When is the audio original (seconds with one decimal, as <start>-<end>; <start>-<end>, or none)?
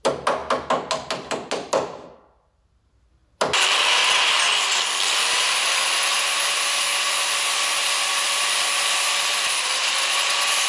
0.0-10.7